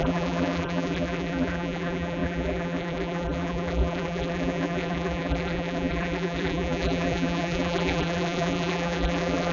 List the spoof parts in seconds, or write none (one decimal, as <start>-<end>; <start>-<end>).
0.0-9.5